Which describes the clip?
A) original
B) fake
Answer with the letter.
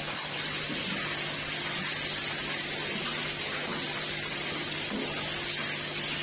A